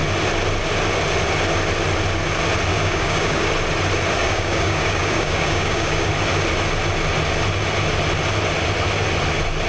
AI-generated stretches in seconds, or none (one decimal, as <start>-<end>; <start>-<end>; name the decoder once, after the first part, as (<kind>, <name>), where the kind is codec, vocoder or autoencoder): 2.7-3.5 (codec, DAC); 4.2-6.1